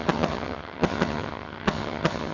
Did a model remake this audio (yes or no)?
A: yes